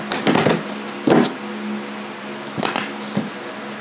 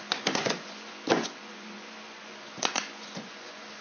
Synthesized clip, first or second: second